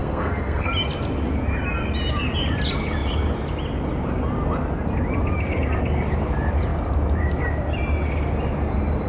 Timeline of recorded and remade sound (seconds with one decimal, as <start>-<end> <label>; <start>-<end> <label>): 0.0-0.7 remade; 0.7-9.1 recorded